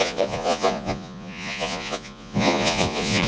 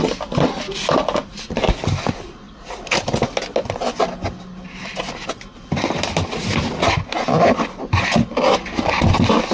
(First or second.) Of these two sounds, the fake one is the first